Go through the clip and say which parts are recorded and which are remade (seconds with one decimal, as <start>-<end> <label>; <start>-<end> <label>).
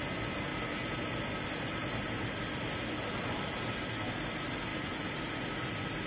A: 0.0-6.1 recorded